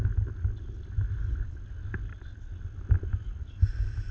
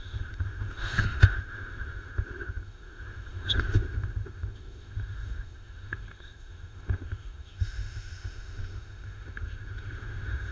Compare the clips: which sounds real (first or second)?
first